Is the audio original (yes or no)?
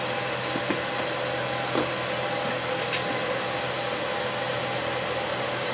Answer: yes